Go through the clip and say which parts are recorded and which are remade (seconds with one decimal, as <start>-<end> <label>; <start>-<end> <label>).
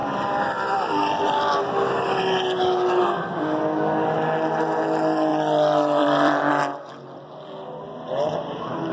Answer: 0.0-1.4 remade; 1.4-5.3 recorded; 5.3-6.5 remade; 6.5-8.9 recorded